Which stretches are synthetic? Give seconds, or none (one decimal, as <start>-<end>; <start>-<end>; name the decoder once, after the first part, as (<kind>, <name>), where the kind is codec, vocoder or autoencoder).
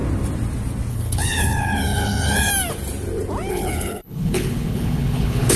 0.9-2.5 (codec, HILCodec); 3.5-5.6